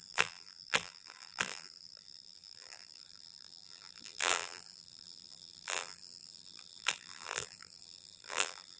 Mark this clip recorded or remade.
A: remade